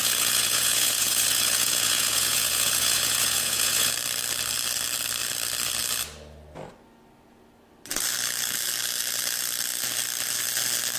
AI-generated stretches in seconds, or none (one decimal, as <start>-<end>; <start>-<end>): 0.0-3.9